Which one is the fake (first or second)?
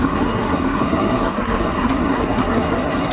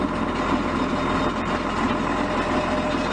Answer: first